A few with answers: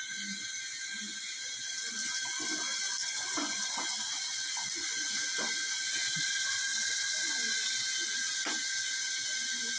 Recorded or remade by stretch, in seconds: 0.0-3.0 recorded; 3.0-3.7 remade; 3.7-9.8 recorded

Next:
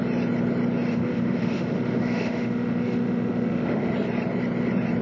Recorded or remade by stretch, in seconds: 0.0-0.9 recorded; 0.9-3.9 remade; 3.9-5.0 recorded

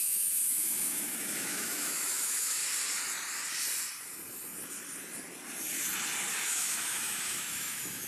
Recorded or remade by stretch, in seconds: 0.0-2.6 remade; 2.6-6.3 recorded; 6.3-8.1 remade